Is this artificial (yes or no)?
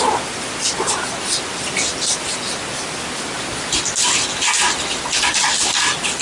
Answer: no